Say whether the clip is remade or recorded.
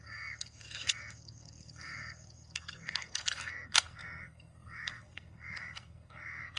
remade